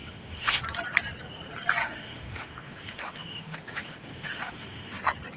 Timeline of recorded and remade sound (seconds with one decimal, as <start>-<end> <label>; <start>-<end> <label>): 0.0-0.6 remade; 0.6-1.8 recorded; 1.8-5.0 remade; 5.0-5.4 recorded